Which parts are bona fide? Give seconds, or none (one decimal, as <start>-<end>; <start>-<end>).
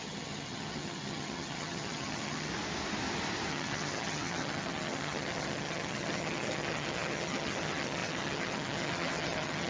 2.5-3.5